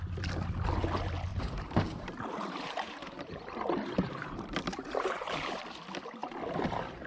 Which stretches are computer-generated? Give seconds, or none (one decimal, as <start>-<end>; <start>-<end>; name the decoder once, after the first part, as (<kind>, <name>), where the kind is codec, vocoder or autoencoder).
1.3-5.6 (vocoder, BigVGAN v2)